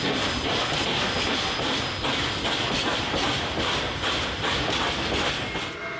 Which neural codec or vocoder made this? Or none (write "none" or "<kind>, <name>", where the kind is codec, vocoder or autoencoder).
none